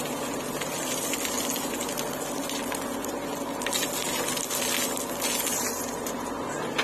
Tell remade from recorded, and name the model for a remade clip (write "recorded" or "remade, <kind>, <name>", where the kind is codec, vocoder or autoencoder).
recorded